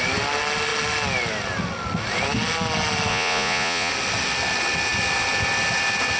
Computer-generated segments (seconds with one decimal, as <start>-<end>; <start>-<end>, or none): 3.1-3.9